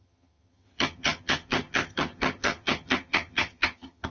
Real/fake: fake